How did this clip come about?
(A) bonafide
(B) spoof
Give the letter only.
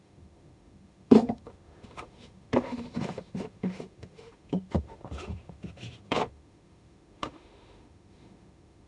B